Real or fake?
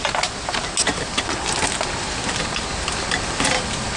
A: real